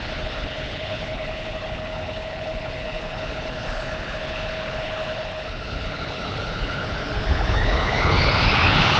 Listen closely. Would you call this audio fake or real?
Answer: fake